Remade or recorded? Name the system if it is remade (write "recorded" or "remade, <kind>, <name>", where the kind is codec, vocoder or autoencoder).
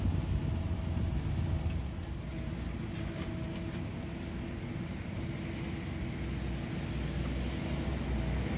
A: recorded